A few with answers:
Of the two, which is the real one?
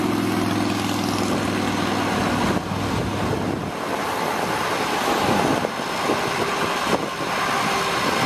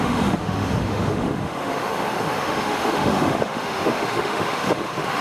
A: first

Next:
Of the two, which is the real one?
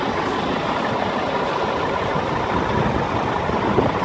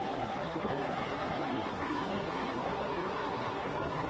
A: first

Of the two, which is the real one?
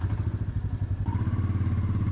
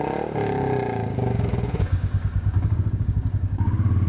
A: first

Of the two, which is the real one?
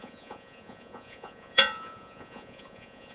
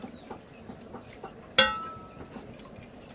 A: second